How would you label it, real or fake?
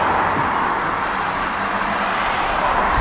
real